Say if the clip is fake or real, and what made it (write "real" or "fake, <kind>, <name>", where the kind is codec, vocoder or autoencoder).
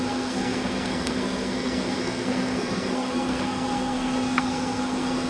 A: fake, codec, SNAC